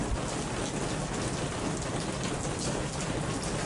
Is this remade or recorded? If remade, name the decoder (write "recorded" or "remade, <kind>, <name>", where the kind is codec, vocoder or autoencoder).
recorded